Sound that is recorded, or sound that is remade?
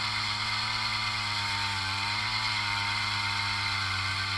recorded